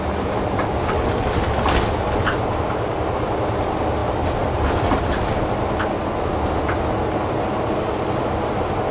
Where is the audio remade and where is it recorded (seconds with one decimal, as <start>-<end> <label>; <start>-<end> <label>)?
0.0-8.9 recorded